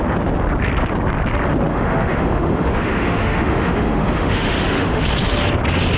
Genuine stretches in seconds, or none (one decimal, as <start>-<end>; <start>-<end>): 0.0-1.7; 5.0-6.0